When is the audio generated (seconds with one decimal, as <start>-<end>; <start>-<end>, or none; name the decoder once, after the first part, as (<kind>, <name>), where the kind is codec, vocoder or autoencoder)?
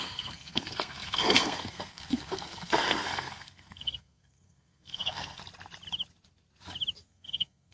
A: 0.0-5.4 (codec, SNAC); 7.0-7.7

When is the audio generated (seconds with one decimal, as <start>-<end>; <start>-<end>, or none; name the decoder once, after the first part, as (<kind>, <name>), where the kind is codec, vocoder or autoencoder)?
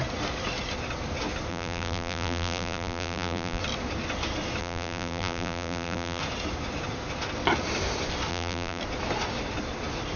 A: 1.5-3.6 (vocoder, BigVGAN v2); 4.6-6.2; 8.3-8.8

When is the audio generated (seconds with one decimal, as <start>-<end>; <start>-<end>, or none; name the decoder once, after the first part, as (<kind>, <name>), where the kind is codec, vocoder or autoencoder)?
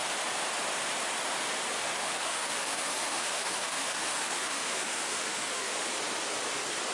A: 1.8-5.9 (autoencoder, DAC-VAE)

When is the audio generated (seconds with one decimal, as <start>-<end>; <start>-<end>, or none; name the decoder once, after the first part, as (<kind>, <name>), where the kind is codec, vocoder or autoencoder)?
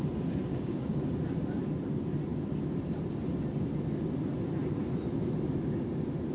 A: 0.5-1.0 (codec, DAC)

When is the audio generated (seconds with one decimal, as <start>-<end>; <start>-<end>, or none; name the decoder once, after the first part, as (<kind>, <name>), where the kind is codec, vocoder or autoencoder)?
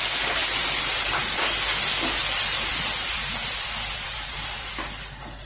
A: 2.7-4.7 (vocoder, BigVGAN v2)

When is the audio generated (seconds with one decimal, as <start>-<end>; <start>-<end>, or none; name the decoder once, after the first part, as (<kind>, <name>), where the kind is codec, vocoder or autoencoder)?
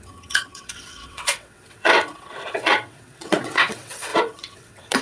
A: 0.0-5.0 (vocoder, WaveNeXt)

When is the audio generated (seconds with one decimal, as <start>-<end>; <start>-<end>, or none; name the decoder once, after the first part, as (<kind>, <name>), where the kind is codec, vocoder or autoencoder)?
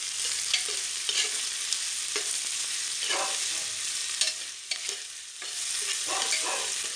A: none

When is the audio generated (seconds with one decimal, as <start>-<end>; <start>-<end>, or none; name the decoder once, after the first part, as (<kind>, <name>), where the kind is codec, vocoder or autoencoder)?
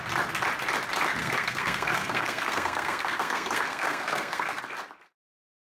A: 1.2-4.6 (codec, SNAC)